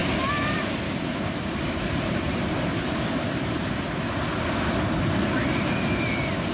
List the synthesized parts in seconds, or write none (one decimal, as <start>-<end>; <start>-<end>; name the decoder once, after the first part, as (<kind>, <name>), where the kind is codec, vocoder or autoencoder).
0.0-3.7 (vocoder, BigVGAN v2)